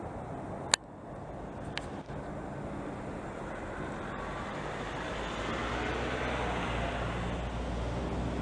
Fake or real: real